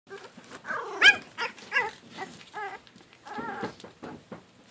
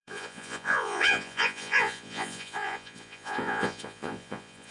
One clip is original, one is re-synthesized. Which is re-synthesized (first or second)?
second